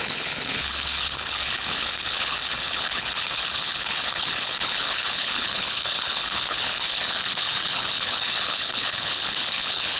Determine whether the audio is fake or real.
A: fake